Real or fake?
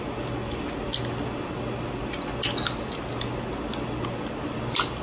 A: real